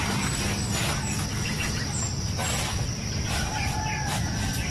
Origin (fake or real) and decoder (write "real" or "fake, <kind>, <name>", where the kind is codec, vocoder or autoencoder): real